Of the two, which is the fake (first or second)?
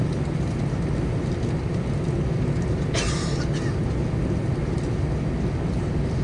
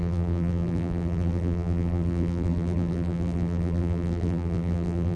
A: second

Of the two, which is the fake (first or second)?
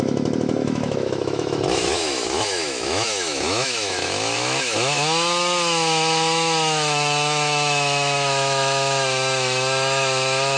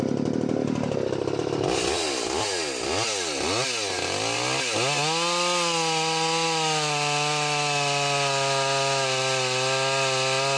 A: first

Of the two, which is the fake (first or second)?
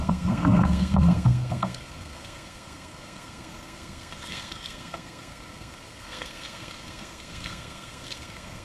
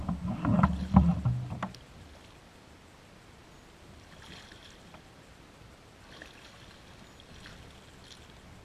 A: first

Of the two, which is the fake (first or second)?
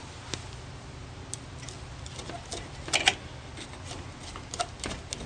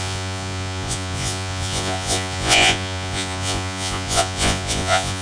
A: second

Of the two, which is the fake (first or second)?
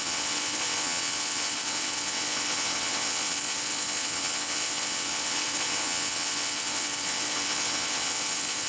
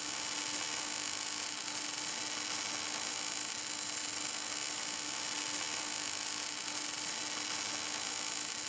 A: first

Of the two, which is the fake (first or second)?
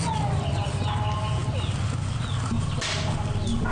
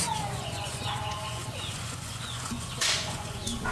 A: second